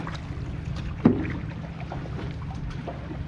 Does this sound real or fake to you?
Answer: real